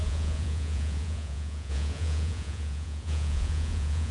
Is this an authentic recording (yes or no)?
no